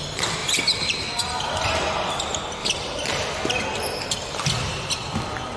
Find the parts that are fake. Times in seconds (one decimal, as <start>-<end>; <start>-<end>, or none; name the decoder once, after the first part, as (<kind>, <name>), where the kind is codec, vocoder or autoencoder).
none